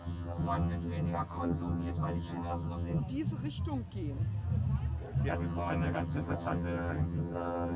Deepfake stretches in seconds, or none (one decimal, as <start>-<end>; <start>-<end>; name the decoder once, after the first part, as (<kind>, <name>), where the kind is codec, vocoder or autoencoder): 0.0-3.0 (vocoder, HiFi-GAN); 5.3-7.8